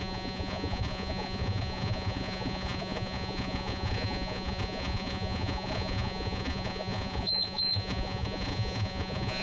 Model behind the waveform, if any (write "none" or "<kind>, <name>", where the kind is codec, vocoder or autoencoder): vocoder, Vocos